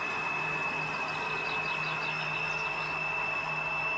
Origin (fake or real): real